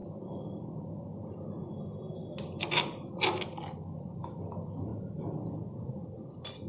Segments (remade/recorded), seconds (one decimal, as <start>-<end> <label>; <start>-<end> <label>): 0.0-4.0 recorded; 4.0-6.7 remade